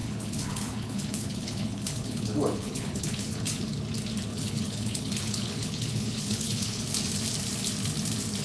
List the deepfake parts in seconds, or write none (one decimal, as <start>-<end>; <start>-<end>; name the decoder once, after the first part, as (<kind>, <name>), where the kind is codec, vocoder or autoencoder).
0.0-3.8 (codec, HILCodec); 4.3-6.8